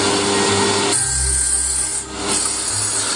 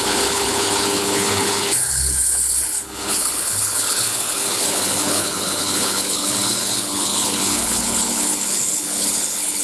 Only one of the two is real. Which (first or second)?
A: first